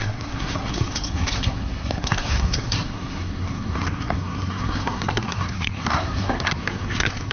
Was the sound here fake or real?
fake